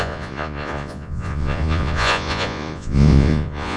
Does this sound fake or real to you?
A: fake